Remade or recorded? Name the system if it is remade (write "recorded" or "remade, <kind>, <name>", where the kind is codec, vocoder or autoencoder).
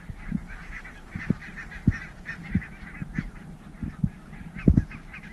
recorded